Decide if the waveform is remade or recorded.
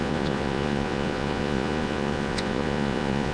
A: remade